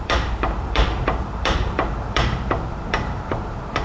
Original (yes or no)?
no